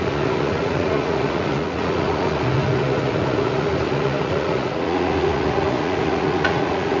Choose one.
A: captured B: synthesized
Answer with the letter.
B